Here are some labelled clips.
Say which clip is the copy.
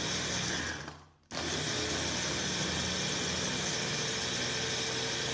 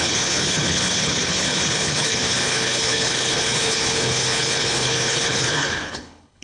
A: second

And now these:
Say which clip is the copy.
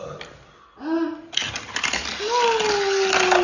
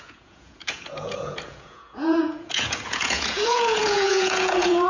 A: second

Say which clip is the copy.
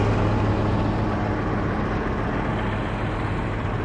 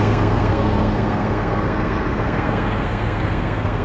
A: second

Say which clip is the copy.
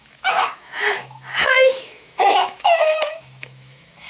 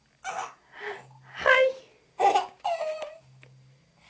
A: first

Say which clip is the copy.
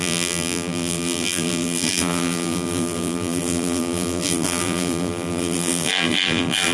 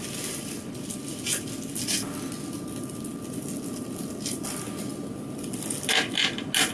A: first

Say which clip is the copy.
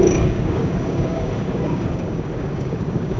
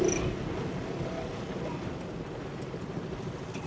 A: first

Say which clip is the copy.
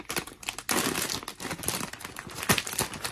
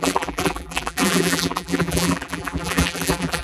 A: second